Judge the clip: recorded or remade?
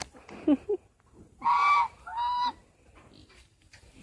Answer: recorded